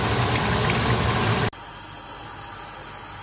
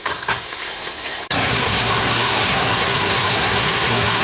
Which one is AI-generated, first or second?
second